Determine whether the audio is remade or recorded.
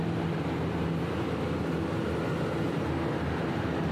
recorded